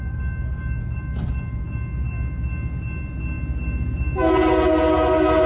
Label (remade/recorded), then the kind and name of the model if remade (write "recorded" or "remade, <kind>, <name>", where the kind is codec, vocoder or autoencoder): recorded